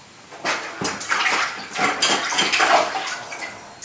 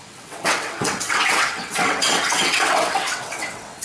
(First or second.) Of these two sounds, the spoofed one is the second